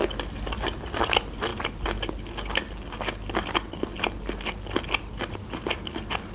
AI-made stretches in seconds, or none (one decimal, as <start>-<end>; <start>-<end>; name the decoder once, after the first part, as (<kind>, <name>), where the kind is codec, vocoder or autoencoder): none

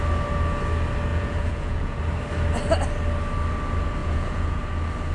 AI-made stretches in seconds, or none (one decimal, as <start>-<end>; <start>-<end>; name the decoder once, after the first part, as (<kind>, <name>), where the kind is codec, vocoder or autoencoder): 1.1-2.0 (vocoder, Vocos); 4.0-4.6

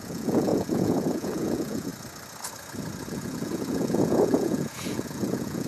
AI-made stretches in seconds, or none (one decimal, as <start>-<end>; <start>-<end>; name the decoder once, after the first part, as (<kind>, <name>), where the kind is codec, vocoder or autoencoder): 0.0-1.9 (vocoder, Vocos); 3.1-5.7

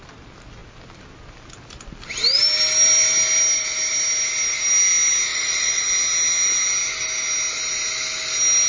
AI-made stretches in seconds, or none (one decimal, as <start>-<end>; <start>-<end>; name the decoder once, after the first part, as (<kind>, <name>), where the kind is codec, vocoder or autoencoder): 5.3-5.8 (vocoder, Vocos)